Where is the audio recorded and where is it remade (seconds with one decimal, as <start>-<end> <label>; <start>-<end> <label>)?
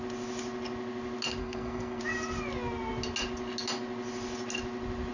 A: 0.0-1.4 recorded; 1.4-2.0 remade; 2.0-5.1 recorded